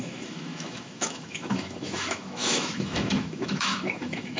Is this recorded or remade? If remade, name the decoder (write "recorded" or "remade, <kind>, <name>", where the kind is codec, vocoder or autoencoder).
remade, autoencoder, DAC-VAE